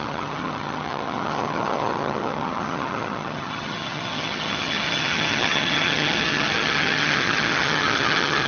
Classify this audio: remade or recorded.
remade